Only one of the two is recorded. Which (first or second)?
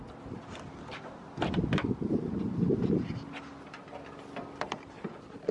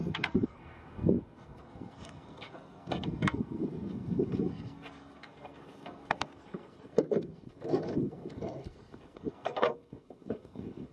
first